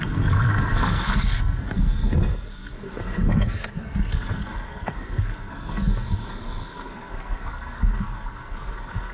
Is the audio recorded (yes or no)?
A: no